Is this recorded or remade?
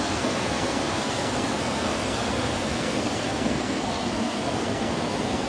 remade